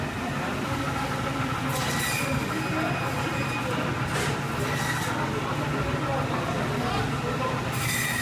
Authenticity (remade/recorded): recorded